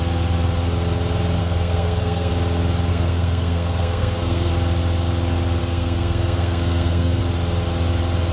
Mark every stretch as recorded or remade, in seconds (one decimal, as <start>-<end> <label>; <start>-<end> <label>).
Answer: 0.0-1.4 recorded; 1.4-2.3 remade; 2.3-2.9 recorded; 2.9-4.5 remade; 4.5-5.6 recorded; 5.6-7.2 remade; 7.2-8.3 recorded